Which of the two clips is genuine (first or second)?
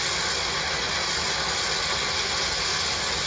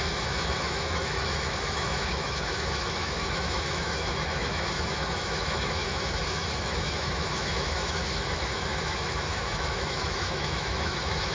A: first